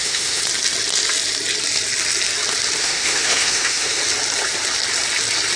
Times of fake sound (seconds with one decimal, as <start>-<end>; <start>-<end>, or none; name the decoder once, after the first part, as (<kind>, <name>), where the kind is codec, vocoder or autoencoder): 0.0-0.4 (autoencoder, DAC-VAE); 2.8-4.0